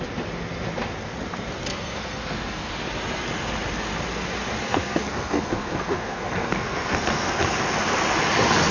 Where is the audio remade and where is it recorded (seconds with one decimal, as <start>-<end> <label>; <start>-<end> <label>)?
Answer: 0.0-1.7 recorded; 1.7-2.7 remade; 2.7-4.6 recorded; 4.6-7.3 remade; 7.3-8.7 recorded